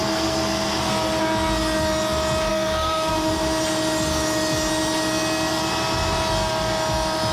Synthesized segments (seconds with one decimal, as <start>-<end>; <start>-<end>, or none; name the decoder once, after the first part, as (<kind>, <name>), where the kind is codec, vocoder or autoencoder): 0.0-0.9 (codec, SNAC); 2.5-3.1